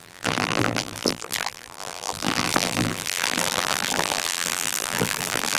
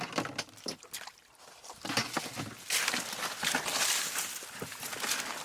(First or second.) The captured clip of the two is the second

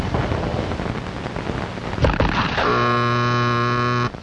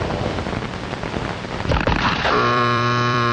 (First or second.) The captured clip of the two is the first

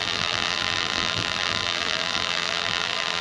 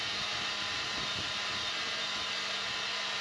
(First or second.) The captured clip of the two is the second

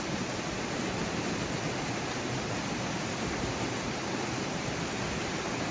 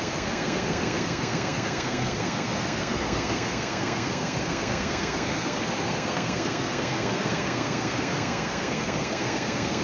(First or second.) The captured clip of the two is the first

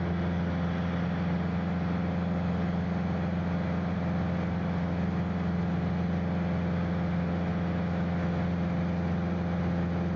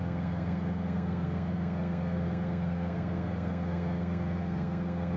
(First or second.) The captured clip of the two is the first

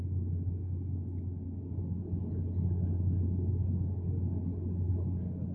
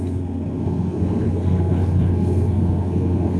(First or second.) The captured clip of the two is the first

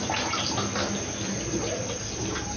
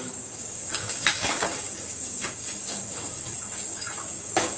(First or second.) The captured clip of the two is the first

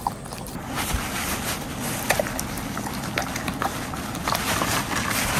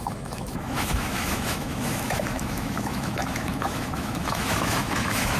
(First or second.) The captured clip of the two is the first